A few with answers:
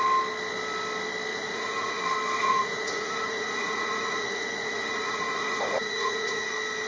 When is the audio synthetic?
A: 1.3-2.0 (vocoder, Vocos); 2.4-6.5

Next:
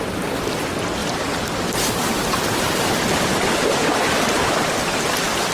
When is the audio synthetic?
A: 1.0-4.3 (vocoder, BigVGAN v2)